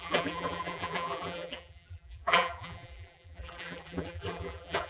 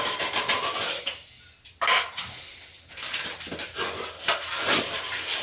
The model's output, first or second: first